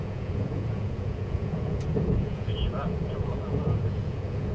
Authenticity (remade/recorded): remade